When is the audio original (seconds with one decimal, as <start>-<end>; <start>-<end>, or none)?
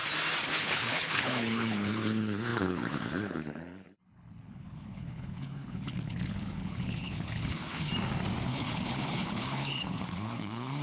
0.0-0.6; 7.9-8.5